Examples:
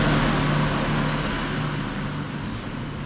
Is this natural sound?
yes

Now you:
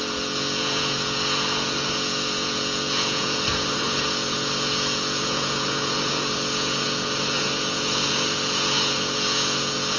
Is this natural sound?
no